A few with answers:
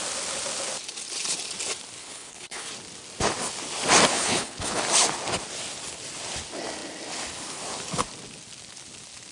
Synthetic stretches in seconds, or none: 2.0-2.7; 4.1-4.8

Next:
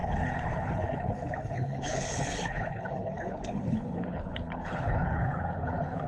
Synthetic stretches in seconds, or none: 0.0-6.1